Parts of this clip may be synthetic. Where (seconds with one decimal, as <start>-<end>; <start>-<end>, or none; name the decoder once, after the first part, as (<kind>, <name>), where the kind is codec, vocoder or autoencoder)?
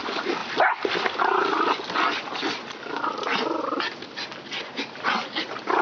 none